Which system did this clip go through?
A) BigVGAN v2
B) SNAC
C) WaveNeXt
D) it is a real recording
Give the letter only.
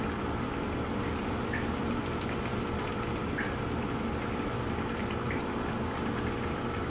D